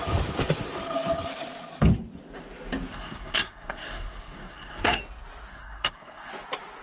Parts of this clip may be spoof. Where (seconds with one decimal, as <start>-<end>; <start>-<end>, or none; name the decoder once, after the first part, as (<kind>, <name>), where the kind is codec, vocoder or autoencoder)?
2.9-5.0 (codec, SNAC); 5.5-6.3